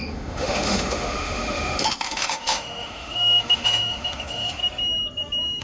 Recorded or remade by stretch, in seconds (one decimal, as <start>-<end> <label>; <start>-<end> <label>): 0.0-4.6 remade; 4.6-5.6 recorded